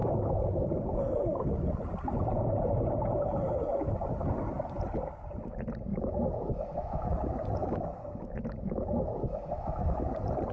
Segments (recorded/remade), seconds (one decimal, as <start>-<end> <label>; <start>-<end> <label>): 0.0-5.9 recorded; 5.9-7.1 remade; 7.1-7.6 recorded; 7.6-10.0 remade; 10.0-10.5 recorded